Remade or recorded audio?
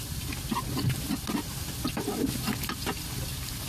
recorded